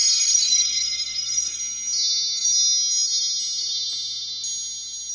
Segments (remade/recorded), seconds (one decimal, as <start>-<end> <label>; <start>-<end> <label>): 0.0-1.6 remade; 1.6-5.1 recorded